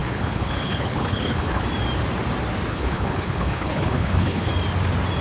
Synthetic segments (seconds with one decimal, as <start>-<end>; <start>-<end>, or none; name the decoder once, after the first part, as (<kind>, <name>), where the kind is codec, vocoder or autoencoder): 0.0-1.6 (codec, HILCodec); 2.7-4.5